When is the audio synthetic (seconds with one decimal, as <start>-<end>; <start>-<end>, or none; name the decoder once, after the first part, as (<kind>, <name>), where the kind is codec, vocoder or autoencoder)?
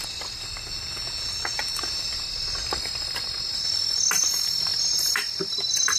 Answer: 4.7-6.0 (vocoder, BigVGAN v2)